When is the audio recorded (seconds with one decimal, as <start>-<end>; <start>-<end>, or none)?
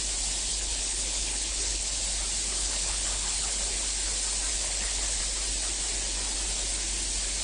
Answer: 0.0-0.5; 2.0-2.5; 3.6-4.5; 5.2-7.4